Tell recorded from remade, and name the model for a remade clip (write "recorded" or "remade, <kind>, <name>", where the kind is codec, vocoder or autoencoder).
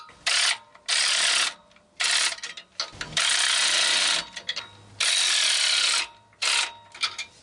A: recorded